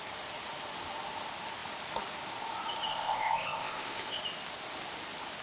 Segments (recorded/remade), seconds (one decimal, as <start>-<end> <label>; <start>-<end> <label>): 0.0-2.9 recorded; 2.9-4.2 remade; 4.2-5.4 recorded